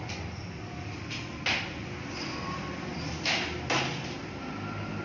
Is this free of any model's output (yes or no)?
yes